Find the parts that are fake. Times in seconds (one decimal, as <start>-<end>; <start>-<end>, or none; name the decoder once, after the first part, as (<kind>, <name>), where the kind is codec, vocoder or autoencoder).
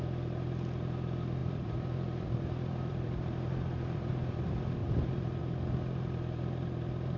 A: 1.4-4.1 (vocoder, BigVGAN v2); 4.8-5.4